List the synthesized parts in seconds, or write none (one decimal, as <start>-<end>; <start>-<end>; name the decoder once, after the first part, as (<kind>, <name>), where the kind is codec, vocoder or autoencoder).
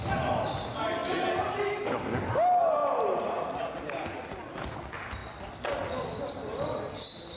none